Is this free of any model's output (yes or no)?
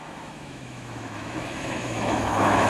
no